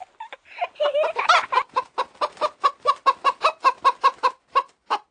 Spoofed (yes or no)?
no